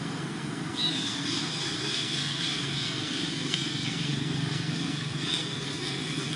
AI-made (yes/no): yes